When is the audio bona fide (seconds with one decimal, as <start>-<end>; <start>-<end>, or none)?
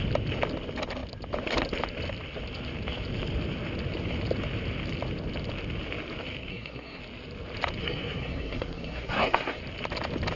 0.0-6.5; 7.0-7.8; 9.6-10.4